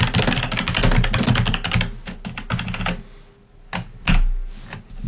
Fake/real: real